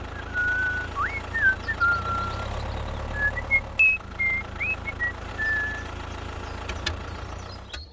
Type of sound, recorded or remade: recorded